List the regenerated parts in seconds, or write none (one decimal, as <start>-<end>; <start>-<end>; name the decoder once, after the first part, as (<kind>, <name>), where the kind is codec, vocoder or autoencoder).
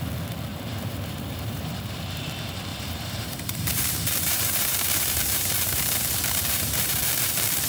0.5-2.3 (vocoder, BigVGAN v2); 2.7-7.3